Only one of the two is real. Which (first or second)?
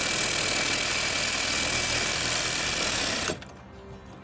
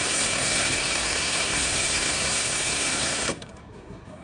first